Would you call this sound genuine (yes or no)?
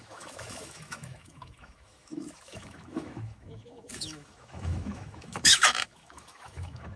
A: no